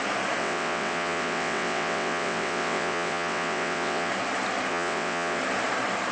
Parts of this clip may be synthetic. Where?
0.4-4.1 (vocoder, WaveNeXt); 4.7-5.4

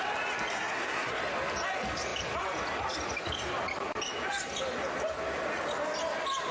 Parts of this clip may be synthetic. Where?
0.5-1.2 (codec, SNAC)

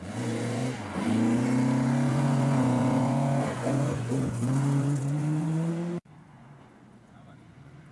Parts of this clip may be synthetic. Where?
0.0-0.6 (vocoder, Vocos); 2.1-7.9

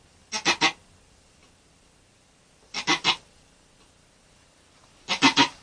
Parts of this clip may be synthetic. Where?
none

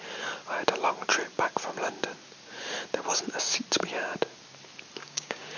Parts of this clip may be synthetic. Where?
5.0-5.6 (codec, DAC)

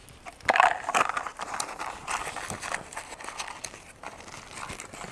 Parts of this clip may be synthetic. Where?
none

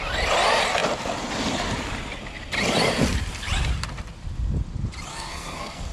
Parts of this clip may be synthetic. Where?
5.1-5.9 (codec, SNAC)